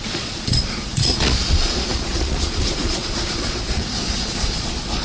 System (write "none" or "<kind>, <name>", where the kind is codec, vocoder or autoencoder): vocoder, Vocos